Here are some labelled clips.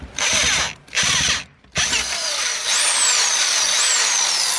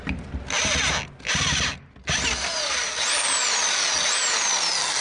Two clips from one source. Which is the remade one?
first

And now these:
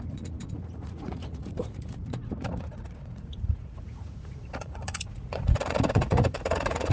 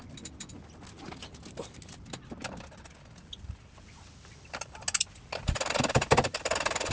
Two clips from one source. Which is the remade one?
first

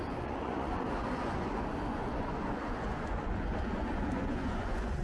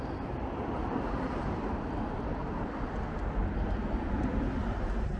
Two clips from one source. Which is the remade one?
first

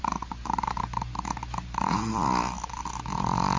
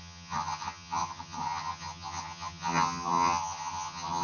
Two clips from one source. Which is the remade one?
second